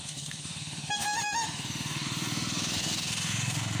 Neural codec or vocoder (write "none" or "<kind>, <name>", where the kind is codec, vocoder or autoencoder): autoencoder, DAC-VAE